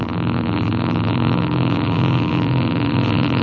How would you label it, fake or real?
fake